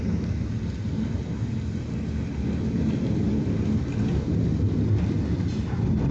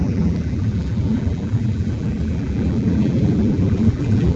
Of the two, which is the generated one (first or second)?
second